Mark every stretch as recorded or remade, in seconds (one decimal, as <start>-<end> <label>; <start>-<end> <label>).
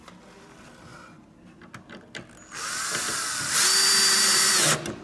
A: 0.0-5.0 recorded